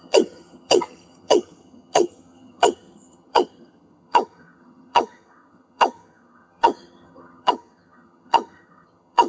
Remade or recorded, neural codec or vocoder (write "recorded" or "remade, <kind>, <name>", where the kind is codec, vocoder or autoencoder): remade, vocoder, HiFi-GAN